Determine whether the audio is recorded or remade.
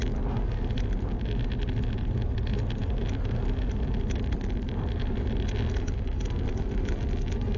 recorded